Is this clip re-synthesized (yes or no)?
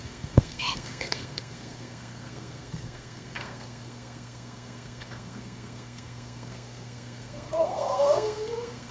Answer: yes